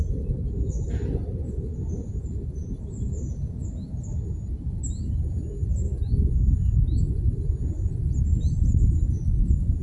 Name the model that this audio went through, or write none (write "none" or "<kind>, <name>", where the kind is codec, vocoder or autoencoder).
none